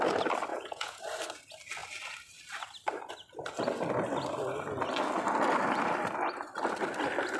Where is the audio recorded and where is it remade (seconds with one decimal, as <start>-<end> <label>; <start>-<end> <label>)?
0.0-0.5 recorded; 0.5-1.0 remade; 1.0-7.4 recorded